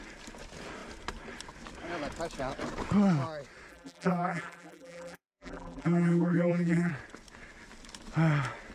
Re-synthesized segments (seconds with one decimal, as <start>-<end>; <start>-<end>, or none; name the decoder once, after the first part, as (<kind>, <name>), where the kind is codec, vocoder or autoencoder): 3.7-6.9 (vocoder, BigVGAN v2)